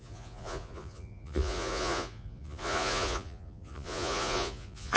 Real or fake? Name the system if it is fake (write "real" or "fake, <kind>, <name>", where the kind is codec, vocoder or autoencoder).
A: fake, vocoder, Vocos